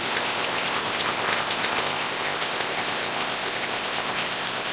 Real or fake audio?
fake